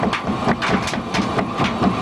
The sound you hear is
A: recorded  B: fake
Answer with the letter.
A